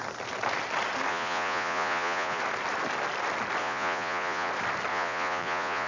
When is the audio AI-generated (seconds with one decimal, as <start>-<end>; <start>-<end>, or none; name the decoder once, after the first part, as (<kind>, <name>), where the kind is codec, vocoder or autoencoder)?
1.1-2.4 (vocoder, Vocos); 3.6-4.5; 4.9-5.9